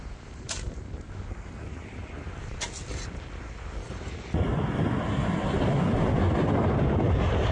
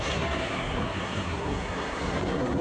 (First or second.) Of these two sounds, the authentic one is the first